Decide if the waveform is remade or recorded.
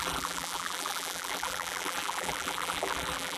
remade